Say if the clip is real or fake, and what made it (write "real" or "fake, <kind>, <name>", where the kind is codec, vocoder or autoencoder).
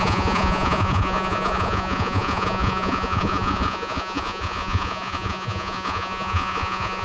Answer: fake, vocoder, Vocos